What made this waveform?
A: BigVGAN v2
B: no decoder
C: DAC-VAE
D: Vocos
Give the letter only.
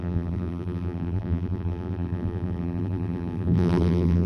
A